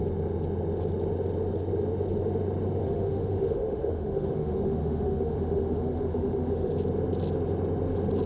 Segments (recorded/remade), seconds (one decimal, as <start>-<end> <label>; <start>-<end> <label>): 0.0-2.8 recorded; 2.8-6.7 remade; 6.7-8.3 recorded